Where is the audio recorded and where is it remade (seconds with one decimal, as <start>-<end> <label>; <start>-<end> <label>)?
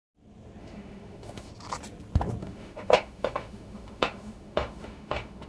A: 0.0-0.6 recorded; 0.6-1.5 remade; 1.5-2.4 recorded; 2.4-5.5 remade